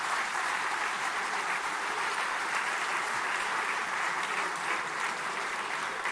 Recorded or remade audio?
remade